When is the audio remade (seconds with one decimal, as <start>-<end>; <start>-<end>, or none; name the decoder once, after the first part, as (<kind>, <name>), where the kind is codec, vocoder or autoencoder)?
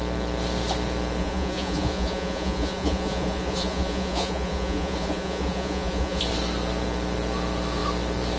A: 1.2-6.2 (vocoder, Vocos)